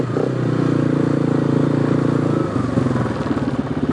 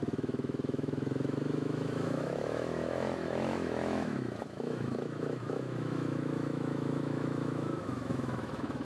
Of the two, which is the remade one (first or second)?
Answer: second